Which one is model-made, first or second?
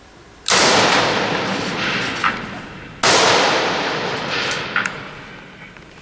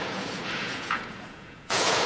second